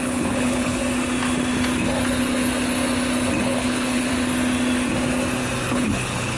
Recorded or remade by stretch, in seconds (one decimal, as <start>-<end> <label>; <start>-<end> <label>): 0.0-0.8 remade; 0.8-3.4 recorded; 3.4-4.1 remade; 4.1-5.7 recorded; 5.7-6.4 remade